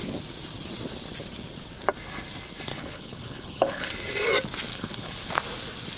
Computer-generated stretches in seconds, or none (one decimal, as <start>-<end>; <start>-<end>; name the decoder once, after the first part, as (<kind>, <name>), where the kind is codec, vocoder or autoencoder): 2.7-3.9 (codec, HILCodec); 4.7-5.3